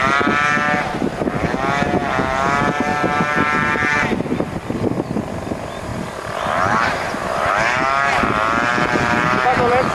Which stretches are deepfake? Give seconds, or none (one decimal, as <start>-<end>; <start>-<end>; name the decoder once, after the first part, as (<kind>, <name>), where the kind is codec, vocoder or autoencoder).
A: 5.9-7.5 (vocoder, BigVGAN v2)